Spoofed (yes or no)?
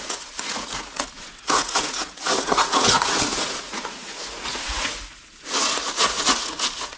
yes